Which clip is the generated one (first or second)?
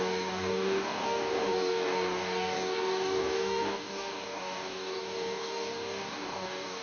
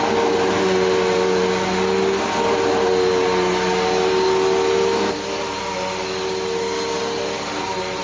first